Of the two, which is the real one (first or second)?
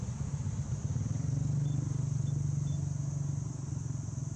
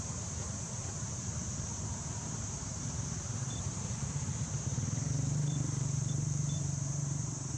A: first